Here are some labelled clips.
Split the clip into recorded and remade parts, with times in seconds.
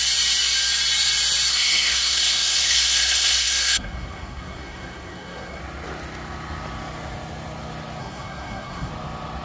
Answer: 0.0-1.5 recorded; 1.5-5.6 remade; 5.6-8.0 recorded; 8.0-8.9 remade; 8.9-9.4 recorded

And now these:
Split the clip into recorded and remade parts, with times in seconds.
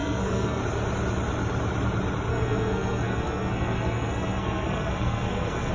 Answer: 0.0-0.6 remade; 0.6-2.3 recorded; 2.3-5.7 remade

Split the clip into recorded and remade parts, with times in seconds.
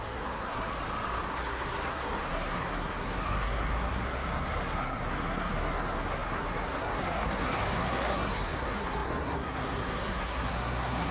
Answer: 0.0-0.7 remade; 0.7-1.3 recorded; 1.3-11.1 remade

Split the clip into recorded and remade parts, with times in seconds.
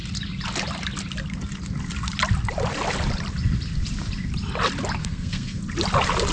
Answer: 0.0-5.0 recorded; 5.0-5.6 remade; 5.6-6.3 recorded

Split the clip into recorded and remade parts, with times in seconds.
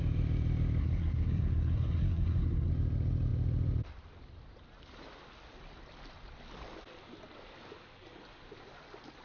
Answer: 0.0-0.8 recorded; 0.8-2.7 remade; 2.7-9.2 recorded